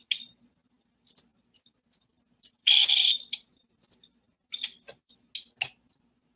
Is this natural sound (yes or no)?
yes